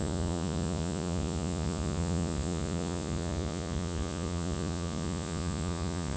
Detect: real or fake fake